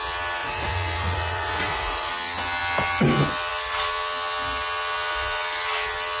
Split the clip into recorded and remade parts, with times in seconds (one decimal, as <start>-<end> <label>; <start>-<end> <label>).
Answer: 0.0-0.4 recorded; 0.4-2.1 remade; 2.1-6.2 recorded